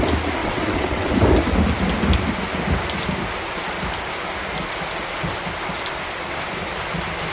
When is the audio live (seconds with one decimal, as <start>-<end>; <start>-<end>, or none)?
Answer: 0.0-0.4; 1.1-7.3